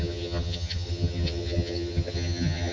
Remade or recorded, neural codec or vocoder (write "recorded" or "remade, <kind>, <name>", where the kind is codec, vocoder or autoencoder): remade, vocoder, HiFi-GAN